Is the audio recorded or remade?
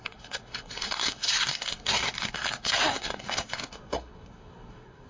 remade